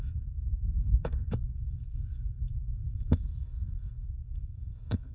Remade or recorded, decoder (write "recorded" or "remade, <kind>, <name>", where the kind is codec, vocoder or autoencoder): remade, codec, SNAC